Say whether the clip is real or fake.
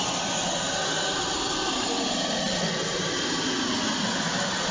real